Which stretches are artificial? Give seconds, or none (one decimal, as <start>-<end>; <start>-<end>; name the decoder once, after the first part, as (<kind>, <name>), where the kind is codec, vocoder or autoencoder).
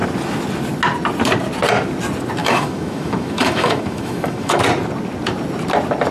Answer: 2.4-4.6 (autoencoder, DAC-VAE)